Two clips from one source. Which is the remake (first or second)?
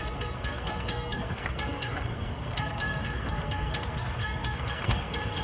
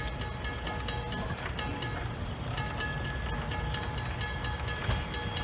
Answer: first